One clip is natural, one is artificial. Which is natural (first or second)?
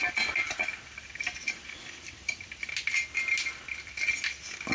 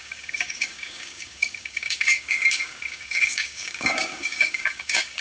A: first